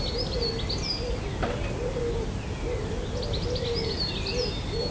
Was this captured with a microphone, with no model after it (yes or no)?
yes